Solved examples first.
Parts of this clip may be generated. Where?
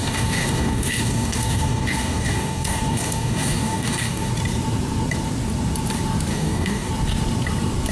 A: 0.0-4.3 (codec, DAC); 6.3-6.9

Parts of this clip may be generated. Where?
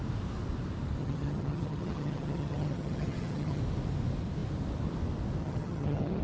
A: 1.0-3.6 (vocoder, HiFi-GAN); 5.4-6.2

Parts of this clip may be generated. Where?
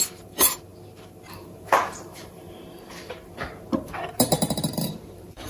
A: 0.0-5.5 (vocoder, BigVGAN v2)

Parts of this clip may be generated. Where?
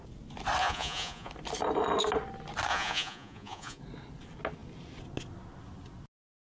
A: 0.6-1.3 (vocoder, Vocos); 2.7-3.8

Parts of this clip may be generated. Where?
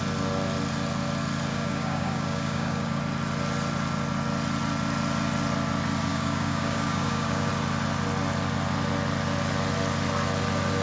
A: 1.5-3.0 (codec, DAC); 6.1-7.5